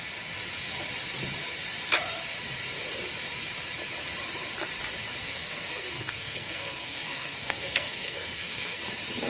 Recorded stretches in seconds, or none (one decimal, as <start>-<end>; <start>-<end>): 0.0-5.2; 8.8-9.3